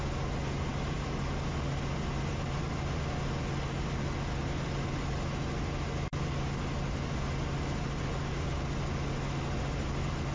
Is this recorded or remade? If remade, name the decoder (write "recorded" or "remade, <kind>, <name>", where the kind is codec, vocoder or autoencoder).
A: recorded